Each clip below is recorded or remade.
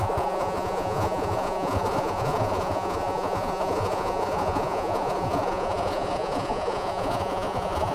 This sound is remade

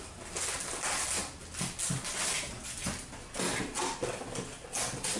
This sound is recorded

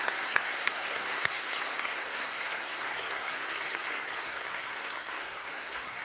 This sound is remade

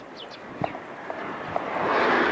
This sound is recorded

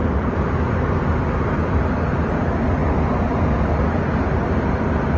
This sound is recorded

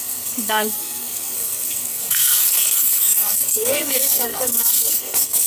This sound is remade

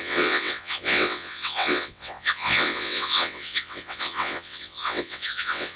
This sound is remade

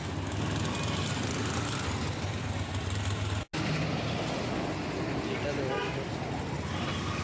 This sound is recorded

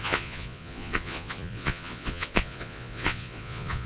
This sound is remade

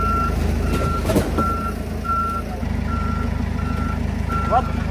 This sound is recorded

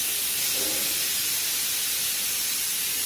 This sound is recorded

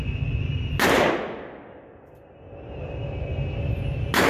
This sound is recorded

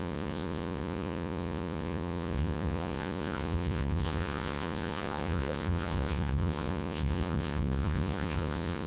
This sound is remade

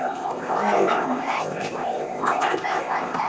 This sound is remade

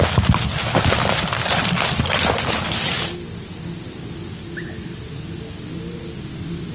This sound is recorded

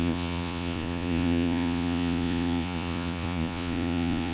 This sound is remade